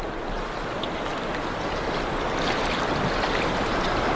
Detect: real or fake real